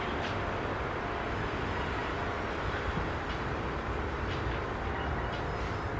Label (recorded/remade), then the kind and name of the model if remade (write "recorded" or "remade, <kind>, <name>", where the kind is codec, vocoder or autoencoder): recorded